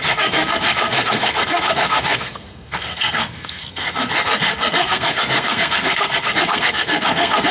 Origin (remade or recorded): remade